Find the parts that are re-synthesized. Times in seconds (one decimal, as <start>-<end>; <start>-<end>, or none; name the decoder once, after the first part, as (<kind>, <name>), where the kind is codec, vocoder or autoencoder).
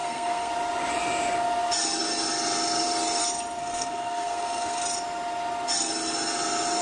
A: 0.0-0.5 (codec, SNAC); 3.6-4.8